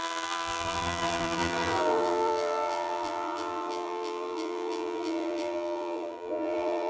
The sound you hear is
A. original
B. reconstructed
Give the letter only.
B